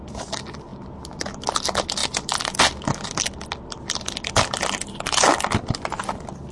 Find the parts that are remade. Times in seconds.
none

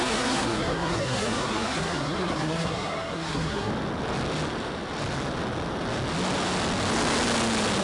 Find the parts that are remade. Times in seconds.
0.0-3.7 (codec, SNAC)

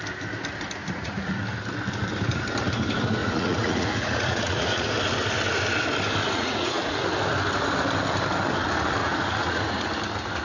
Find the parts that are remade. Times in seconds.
0.8-1.4 (vocoder, Vocos); 3.2-4.9; 6.2-7.0; 9.0-9.9

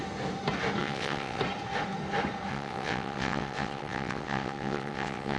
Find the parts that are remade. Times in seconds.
0.8-1.4 (vocoder, WaveNeXt); 2.5-5.4

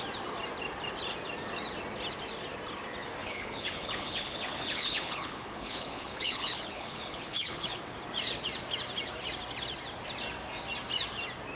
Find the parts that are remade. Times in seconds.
3.2-7.8 (codec, HILCodec)

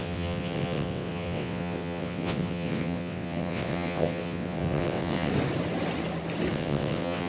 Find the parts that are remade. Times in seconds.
0.0-5.3 (vocoder, WaveNeXt); 6.5-7.3